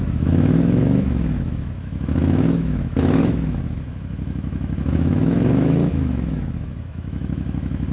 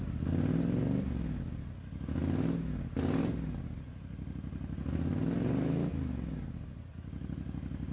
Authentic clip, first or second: second